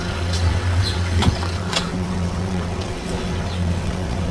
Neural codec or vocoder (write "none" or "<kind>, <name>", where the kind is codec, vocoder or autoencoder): vocoder, WaveNeXt